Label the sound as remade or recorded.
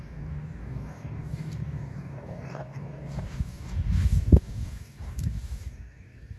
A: remade